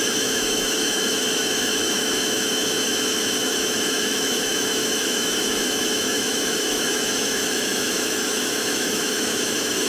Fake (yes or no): yes